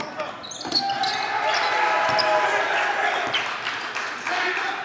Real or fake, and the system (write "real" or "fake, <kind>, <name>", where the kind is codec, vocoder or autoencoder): real